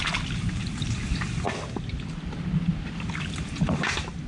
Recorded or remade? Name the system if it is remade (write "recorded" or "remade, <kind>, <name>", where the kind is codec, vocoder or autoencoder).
recorded